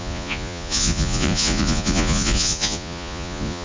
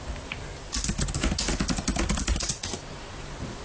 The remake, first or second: first